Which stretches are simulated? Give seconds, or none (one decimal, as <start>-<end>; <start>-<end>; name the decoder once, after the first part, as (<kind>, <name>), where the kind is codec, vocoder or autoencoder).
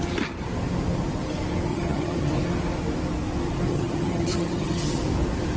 1.7-2.3 (vocoder, HiFi-GAN); 3.7-5.0